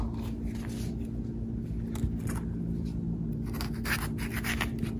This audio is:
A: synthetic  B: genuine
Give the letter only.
B